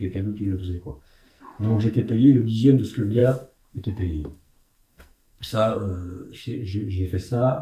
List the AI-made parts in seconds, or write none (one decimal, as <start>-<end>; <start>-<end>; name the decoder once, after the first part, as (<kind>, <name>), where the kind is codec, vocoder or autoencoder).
0.0-7.6 (codec, SNAC)